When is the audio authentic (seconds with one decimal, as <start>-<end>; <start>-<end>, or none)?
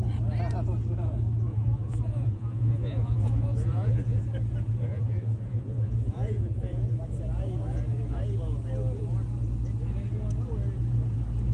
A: 0.0-1.5; 4.2-4.9; 7.0-11.5